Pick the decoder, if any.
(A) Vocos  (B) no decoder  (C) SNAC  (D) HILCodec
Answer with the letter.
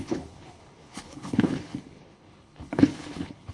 D